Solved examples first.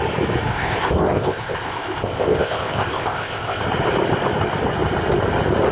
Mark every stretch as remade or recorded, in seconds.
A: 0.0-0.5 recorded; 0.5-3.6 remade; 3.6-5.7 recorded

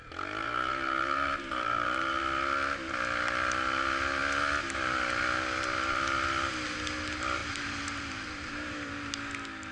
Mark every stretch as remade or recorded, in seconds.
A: 0.0-0.4 recorded; 0.4-2.2 remade; 2.2-7.4 recorded; 7.4-9.1 remade; 9.1-9.7 recorded

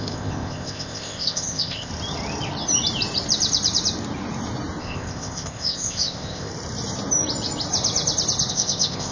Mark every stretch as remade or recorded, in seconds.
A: 0.0-1.9 remade; 1.9-4.8 recorded; 4.8-6.5 remade; 6.5-8.5 recorded; 8.5-9.1 remade

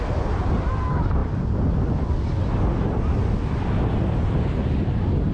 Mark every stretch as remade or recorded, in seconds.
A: 0.0-5.3 remade

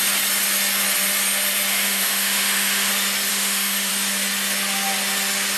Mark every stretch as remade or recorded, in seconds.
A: 0.0-1.7 recorded; 1.7-2.9 remade; 2.9-3.3 recorded; 3.3-3.9 remade; 3.9-5.6 recorded

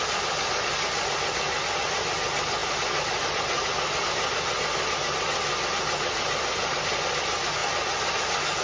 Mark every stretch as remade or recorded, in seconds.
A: 0.0-8.6 recorded